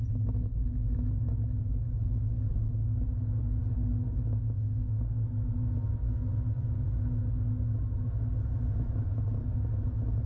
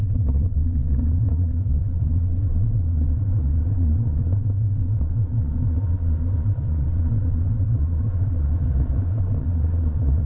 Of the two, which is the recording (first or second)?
first